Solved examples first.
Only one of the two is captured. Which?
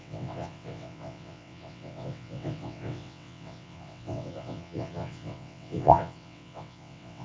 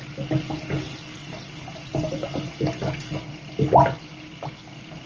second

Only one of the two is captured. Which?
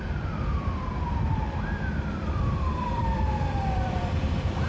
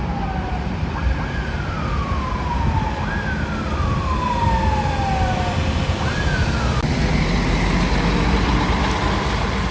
second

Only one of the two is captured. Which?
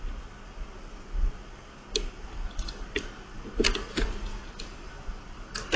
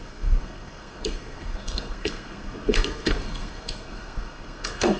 first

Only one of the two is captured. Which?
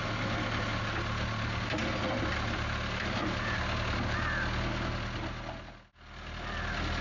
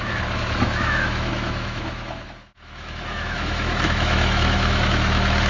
first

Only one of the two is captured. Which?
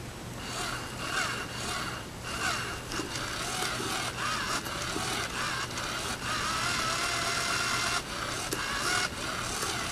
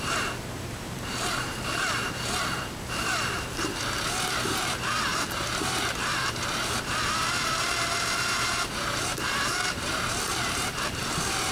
first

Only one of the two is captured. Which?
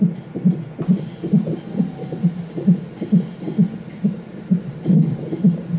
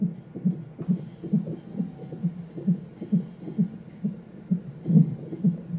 second